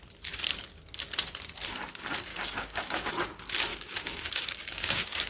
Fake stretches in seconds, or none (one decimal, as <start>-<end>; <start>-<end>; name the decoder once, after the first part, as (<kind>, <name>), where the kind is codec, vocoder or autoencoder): 2.3-3.1 (codec, DAC); 3.7-5.3